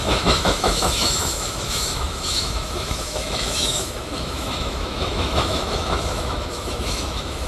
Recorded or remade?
remade